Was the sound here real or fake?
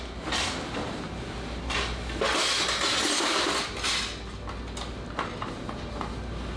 real